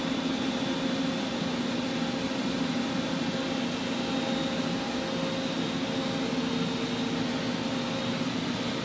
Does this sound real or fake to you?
real